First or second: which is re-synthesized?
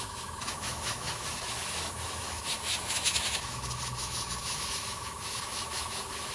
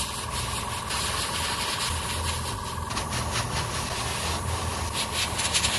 first